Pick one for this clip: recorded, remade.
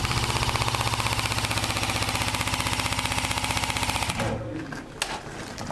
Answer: recorded